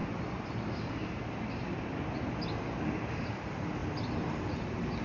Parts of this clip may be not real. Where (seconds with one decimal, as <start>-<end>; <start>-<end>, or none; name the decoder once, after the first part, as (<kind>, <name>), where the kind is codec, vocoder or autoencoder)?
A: 2.6-3.8 (vocoder, BigVGAN v2)